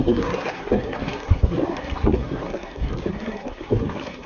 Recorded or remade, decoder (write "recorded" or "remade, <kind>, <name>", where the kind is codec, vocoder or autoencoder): remade, codec, SNAC